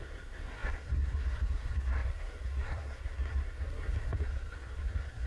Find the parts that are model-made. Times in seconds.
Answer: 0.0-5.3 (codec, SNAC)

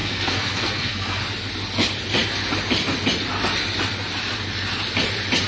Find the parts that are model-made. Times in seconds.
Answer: 0.0-1.2 (codec, SNAC)

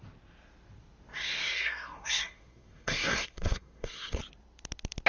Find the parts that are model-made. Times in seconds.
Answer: 1.1-4.2 (codec, SNAC)

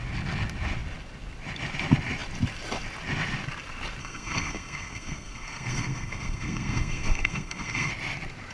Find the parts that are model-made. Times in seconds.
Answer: 4.0-7.9 (codec, SNAC)

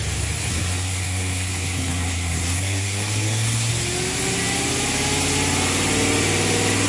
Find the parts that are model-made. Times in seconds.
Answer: 0.5-3.7 (codec, SNAC)

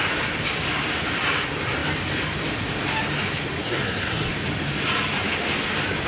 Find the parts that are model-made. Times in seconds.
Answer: 3.6-4.3 (codec, SNAC)

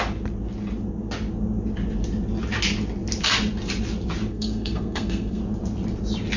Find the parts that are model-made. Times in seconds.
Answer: 4.3-5.4 (codec, SNAC)

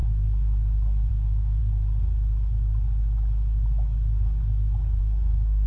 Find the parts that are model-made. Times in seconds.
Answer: 1.1-1.6 (codec, SNAC); 5.0-5.7